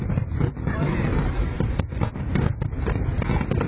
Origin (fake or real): real